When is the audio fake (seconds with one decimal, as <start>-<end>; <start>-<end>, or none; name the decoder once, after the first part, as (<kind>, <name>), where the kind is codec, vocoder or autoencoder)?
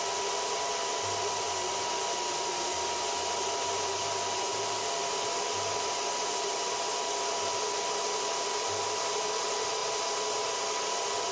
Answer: none